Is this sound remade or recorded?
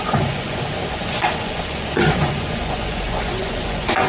remade